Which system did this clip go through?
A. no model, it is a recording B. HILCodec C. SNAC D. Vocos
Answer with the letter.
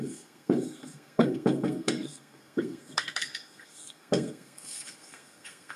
C